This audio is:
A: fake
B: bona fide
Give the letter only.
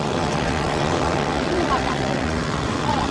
A